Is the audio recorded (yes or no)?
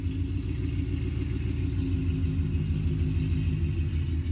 yes